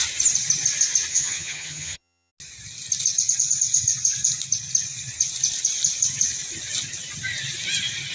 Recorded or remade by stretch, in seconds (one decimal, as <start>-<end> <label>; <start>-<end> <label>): 0.0-1.1 recorded; 1.1-2.3 remade; 2.3-8.1 recorded